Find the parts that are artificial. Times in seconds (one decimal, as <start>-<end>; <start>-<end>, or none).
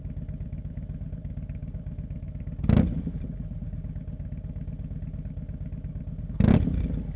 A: none